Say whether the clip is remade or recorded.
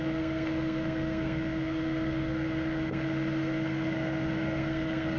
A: remade